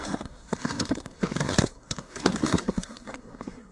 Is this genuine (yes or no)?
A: no